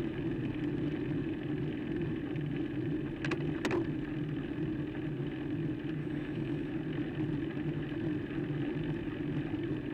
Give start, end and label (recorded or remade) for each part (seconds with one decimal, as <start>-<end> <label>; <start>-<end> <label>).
0.0-6.0 recorded; 6.0-6.7 remade; 6.7-9.9 recorded